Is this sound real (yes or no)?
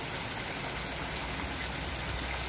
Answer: yes